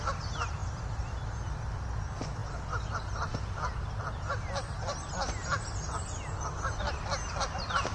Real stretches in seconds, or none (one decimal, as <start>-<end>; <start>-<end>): 0.0-0.6; 2.0-2.4; 3.4-7.9